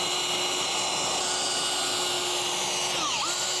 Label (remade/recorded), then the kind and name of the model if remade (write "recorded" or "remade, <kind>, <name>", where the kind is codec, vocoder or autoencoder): recorded